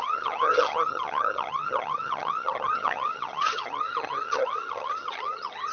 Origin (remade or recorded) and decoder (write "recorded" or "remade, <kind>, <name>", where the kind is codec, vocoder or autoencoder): remade, vocoder, HiFi-GAN